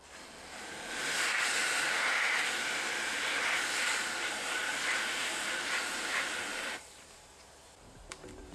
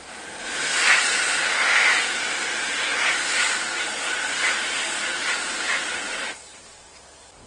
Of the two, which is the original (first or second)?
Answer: second